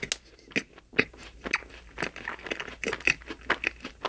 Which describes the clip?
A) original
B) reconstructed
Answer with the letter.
A